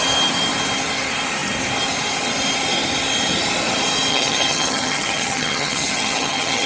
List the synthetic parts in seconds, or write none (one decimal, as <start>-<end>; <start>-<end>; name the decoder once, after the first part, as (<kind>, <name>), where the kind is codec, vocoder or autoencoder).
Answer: 4.1-6.7 (vocoder, HiFi-GAN)